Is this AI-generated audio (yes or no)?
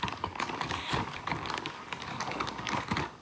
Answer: yes